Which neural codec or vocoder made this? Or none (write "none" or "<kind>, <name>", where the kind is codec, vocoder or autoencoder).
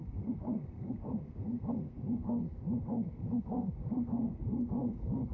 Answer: codec, SNAC